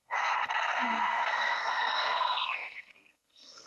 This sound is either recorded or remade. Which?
remade